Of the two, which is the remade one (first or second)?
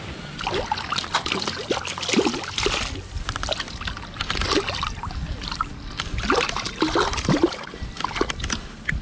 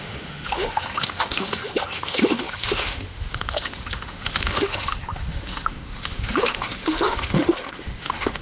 second